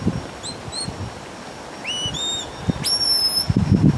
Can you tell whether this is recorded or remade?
recorded